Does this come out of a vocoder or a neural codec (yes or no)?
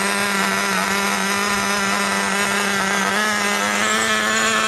no